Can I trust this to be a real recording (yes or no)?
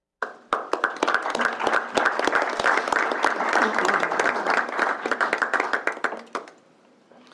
no